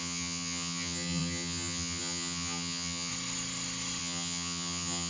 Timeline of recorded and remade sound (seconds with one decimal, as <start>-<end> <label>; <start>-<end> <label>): 0.0-3.1 remade; 3.1-4.0 recorded; 4.0-5.1 remade